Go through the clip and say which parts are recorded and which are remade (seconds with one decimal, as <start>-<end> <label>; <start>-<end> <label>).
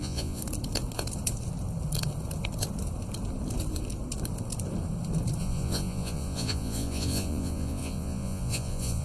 0.0-0.4 remade; 0.4-5.4 recorded; 5.4-9.0 remade